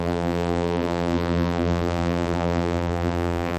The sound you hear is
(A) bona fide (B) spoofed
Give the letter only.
B